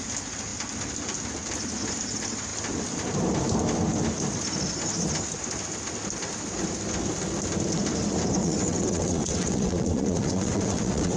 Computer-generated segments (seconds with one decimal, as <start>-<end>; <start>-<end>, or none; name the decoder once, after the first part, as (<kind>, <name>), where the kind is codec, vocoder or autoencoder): 8.4-11.2 (vocoder, WaveNeXt)